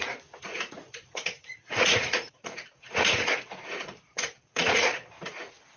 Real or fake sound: fake